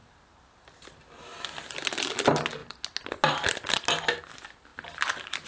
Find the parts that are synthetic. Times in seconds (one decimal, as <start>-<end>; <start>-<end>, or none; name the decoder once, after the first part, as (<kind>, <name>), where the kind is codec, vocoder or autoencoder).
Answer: none